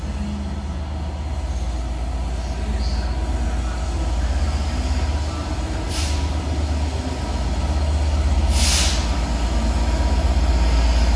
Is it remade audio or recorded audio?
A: recorded